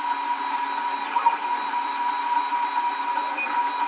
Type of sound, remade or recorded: recorded